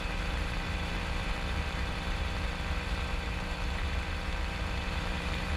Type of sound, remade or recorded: remade